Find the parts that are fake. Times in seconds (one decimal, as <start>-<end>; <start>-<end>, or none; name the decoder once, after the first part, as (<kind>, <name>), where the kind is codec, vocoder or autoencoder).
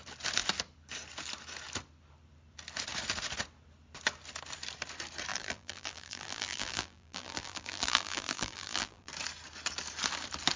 5.3-9.1 (vocoder, BigVGAN v2)